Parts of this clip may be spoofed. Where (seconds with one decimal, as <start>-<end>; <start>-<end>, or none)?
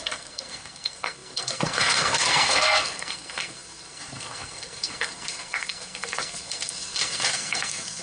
0.0-8.0